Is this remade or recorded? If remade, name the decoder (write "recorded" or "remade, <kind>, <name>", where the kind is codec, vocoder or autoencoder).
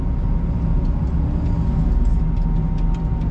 recorded